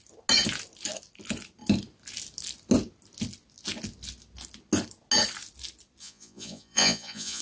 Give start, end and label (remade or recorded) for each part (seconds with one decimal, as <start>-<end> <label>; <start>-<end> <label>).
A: 0.0-6.0 recorded; 6.0-7.4 remade